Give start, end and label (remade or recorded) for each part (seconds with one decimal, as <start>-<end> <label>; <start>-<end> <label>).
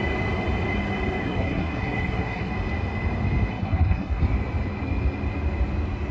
0.0-1.2 recorded; 1.2-2.5 remade; 2.5-3.5 recorded; 3.5-4.2 remade; 4.2-6.1 recorded